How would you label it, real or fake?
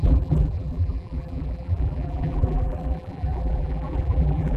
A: fake